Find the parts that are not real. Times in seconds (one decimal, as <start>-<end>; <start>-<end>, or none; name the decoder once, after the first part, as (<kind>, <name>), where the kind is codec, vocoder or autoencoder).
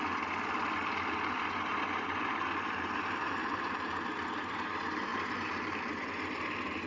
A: 3.4-4.0 (vocoder, BigVGAN v2); 5.1-5.9